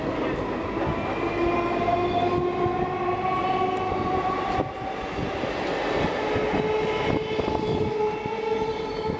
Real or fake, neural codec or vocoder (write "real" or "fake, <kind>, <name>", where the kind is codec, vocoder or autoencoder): real